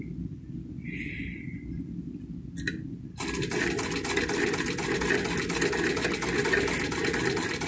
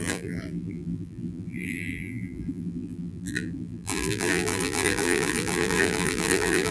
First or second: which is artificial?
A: second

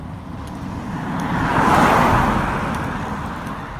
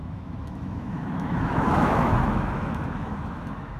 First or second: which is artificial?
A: second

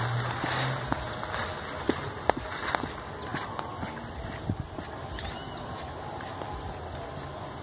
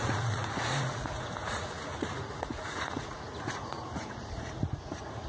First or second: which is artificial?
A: second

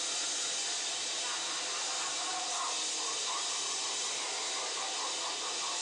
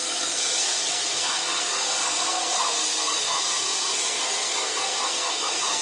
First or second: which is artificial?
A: second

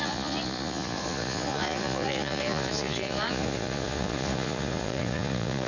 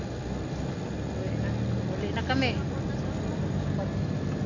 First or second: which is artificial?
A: first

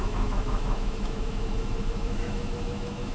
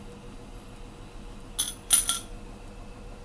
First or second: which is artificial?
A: first